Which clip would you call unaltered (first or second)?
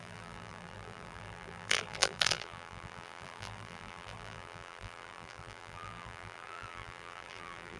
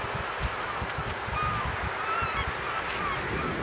second